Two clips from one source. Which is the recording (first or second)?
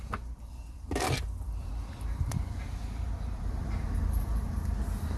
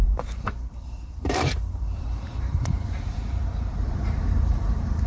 first